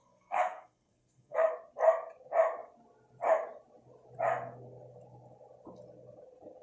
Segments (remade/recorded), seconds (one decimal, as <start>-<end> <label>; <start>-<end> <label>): 0.0-1.5 remade; 1.5-6.6 recorded